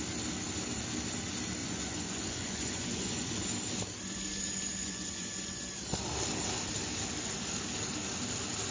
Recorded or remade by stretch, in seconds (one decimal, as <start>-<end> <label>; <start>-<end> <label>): 0.0-1.6 recorded; 1.6-3.3 remade; 3.3-4.8 recorded; 4.8-5.6 remade; 5.6-8.7 recorded